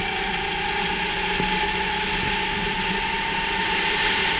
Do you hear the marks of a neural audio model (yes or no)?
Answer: no